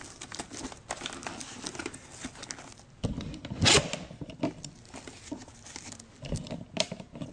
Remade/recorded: recorded